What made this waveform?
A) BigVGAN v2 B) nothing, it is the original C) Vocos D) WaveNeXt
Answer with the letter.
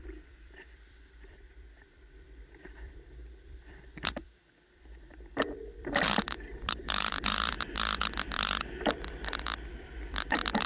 A